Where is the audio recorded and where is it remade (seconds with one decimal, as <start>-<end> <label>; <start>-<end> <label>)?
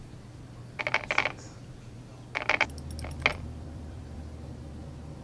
0.0-3.3 recorded; 3.3-4.7 remade; 4.7-5.2 recorded